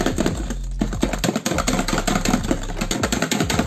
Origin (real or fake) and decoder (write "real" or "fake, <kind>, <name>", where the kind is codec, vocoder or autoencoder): real